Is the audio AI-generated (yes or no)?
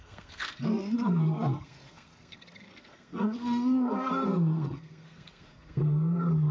yes